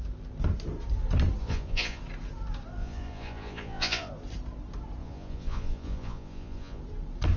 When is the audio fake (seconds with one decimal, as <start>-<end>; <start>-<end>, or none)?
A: 1.4-2.0; 2.8-4.1; 5.0-6.8